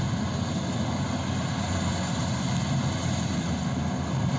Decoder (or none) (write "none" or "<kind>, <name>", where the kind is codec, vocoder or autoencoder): none